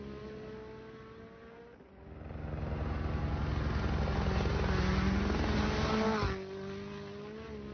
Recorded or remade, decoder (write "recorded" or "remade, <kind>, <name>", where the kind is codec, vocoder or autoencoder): recorded